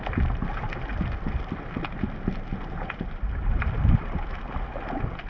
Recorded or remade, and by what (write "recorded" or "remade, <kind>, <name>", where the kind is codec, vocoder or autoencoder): recorded